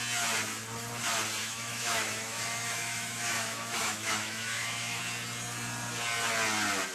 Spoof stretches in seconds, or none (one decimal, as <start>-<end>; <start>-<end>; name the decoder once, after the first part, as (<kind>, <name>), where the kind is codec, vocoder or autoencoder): 1.4-5.0 (autoencoder, DAC-VAE)